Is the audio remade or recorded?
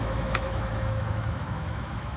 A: remade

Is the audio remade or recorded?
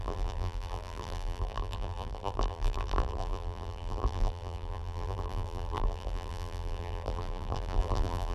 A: remade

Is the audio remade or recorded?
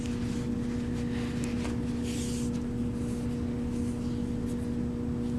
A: recorded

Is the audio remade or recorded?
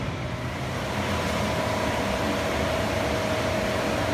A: recorded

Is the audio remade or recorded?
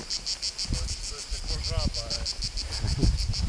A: recorded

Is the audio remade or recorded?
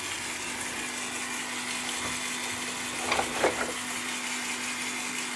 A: recorded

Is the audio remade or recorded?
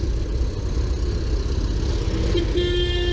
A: recorded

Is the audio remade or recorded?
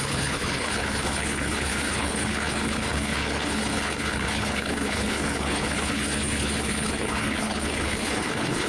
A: remade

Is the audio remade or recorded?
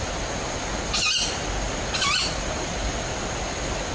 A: recorded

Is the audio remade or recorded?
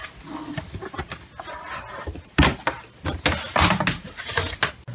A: recorded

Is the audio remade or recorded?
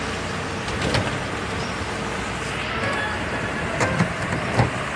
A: recorded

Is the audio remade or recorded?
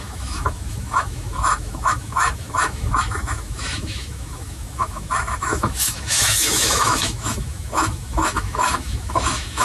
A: remade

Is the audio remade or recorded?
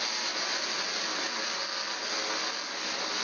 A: recorded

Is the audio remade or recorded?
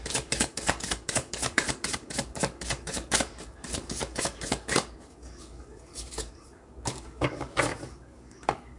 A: remade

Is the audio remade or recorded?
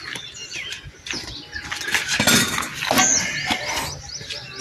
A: recorded